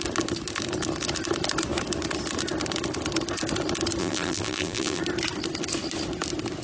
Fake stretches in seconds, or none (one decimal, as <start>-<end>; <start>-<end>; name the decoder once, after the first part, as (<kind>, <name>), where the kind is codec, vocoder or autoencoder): 4.0-5.0 (vocoder, BigVGAN v2)